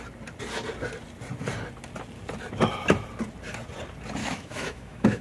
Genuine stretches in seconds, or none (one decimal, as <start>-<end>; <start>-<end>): 0.0-4.2